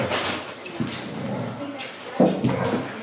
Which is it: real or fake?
real